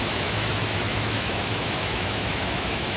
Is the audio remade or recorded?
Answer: remade